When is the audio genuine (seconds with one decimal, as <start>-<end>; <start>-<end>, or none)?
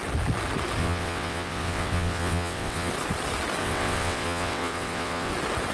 0.0-0.8; 2.9-3.6; 5.3-5.7